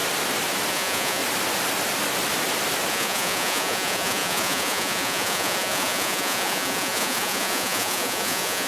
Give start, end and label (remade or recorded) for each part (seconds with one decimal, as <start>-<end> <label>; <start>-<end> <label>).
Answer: 0.0-0.7 recorded; 0.7-1.2 remade; 1.2-2.9 recorded; 2.9-8.7 remade